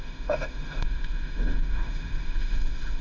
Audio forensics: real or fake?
fake